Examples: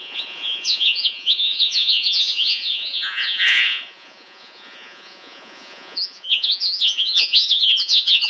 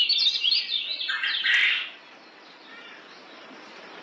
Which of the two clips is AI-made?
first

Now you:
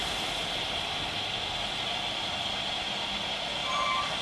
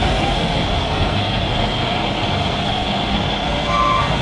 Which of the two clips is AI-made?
second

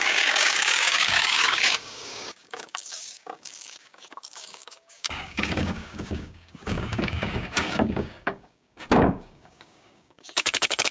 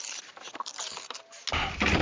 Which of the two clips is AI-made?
first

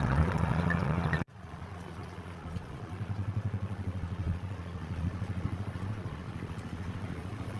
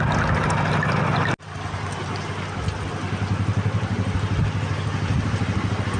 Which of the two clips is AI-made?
first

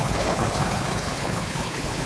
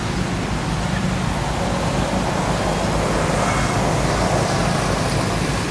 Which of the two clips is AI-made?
first